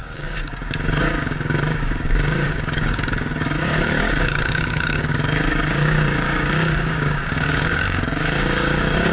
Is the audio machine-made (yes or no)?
yes